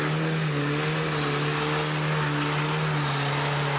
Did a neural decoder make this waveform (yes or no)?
no